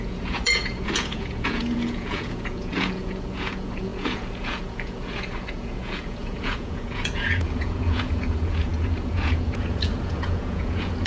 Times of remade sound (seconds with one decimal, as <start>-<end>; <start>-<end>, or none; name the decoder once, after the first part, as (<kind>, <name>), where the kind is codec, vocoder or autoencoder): 0.0-11.1 (vocoder, Vocos)